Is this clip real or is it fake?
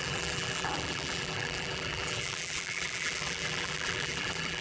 fake